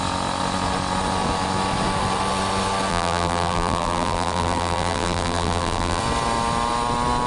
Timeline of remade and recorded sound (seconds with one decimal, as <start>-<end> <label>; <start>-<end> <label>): 0.0-2.9 recorded; 2.9-6.0 remade; 6.0-7.3 recorded